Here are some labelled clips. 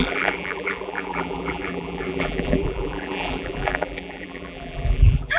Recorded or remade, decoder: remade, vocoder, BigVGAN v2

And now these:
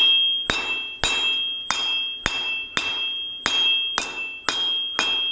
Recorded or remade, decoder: recorded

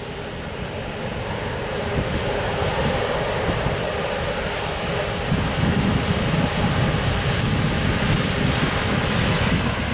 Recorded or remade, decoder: recorded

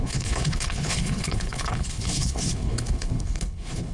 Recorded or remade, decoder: remade, codec, HILCodec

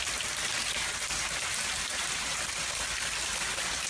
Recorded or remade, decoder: recorded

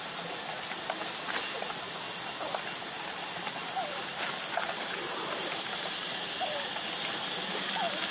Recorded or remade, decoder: recorded